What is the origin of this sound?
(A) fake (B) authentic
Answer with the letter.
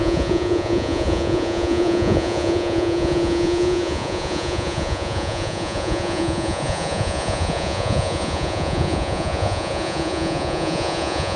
A